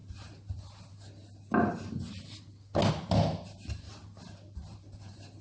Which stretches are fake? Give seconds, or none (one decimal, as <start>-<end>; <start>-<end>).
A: none